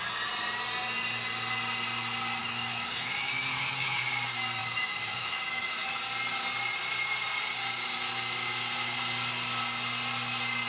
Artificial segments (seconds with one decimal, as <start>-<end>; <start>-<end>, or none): 2.4-4.0; 4.6-6.0